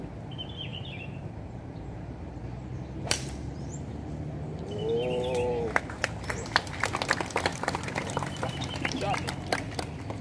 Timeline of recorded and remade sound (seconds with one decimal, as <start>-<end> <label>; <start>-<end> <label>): 0.0-0.7 recorded; 0.7-3.9 remade; 3.9-7.5 recorded; 7.5-9.0 remade; 9.0-10.2 recorded